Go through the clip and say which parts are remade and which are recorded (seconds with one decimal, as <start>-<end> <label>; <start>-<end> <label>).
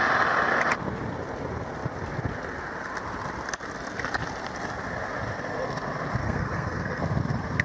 0.0-6.2 recorded; 6.2-7.0 remade; 7.0-7.6 recorded